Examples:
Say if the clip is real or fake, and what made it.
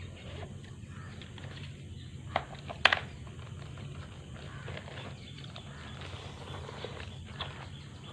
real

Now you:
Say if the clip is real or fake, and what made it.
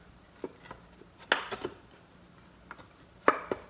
real